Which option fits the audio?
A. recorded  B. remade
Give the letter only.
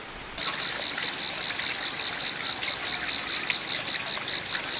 A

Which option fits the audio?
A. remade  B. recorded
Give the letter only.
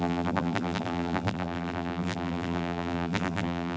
A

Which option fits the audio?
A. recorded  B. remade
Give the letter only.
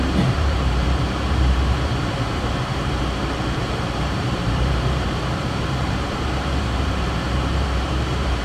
B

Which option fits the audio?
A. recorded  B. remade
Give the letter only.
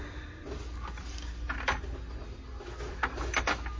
A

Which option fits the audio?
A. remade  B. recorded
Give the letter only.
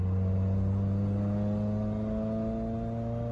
B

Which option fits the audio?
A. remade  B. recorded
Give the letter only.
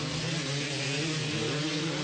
B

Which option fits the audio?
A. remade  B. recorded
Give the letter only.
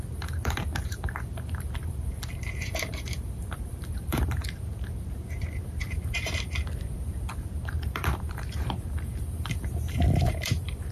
A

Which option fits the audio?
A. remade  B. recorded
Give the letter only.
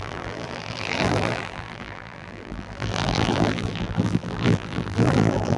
A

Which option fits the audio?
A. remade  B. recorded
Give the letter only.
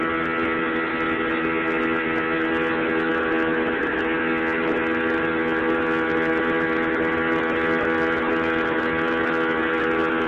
B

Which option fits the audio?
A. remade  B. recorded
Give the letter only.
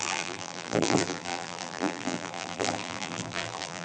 A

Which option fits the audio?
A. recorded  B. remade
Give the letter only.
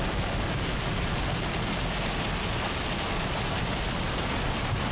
A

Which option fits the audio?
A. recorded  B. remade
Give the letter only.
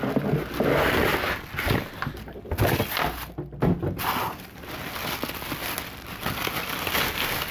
A